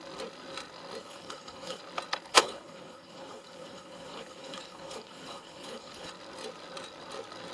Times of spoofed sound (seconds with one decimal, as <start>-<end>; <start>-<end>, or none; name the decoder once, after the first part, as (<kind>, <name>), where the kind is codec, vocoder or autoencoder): 1.0-1.8 (codec, HILCodec); 2.3-6.1